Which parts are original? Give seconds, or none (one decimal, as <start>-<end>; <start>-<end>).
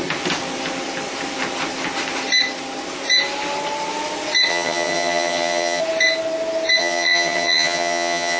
0.0-4.5; 5.8-6.8